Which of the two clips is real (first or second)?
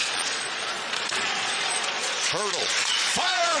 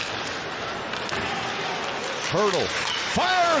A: second